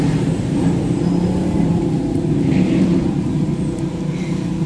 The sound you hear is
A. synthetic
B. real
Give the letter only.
A